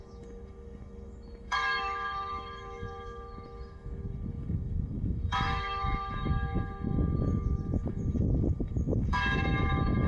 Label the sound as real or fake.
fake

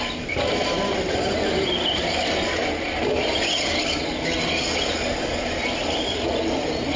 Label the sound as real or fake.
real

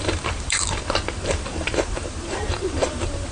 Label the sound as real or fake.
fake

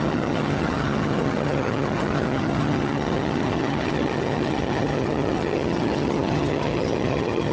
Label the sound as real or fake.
fake